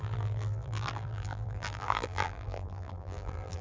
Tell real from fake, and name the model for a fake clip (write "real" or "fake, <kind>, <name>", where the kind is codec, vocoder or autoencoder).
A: fake, vocoder, BigVGAN v2